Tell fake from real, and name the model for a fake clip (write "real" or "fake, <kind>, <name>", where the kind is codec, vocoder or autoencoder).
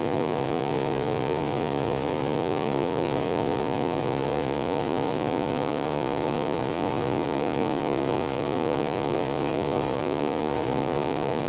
fake, vocoder, Vocos